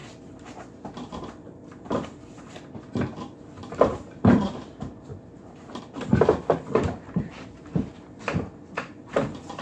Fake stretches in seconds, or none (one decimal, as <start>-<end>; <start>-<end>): 0.0-9.6